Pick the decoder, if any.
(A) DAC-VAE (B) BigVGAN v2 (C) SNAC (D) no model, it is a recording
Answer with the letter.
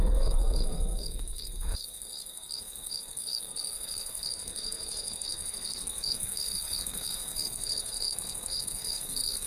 C